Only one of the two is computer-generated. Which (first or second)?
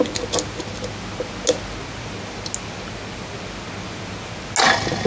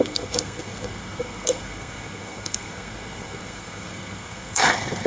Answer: second